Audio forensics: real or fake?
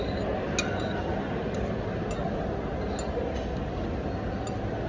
real